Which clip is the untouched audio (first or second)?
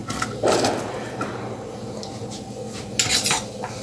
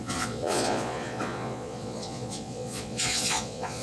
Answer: first